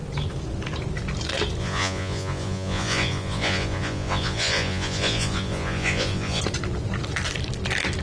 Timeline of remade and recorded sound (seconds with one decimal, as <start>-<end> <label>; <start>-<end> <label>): 0.0-1.6 recorded; 1.6-6.4 remade; 6.4-8.0 recorded